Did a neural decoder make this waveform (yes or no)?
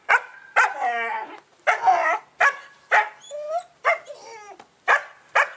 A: no